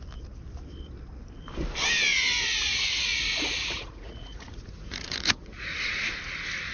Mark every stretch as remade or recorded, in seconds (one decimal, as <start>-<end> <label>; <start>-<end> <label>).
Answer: 0.0-2.1 recorded; 2.1-6.1 remade; 6.1-6.7 recorded